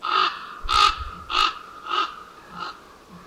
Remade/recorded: recorded